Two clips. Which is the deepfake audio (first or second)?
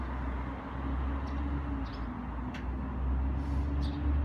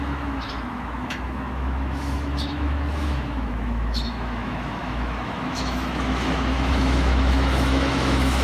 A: second